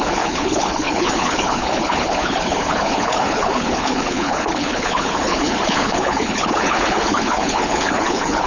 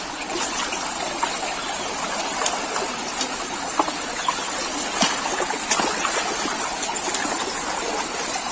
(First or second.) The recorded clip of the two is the second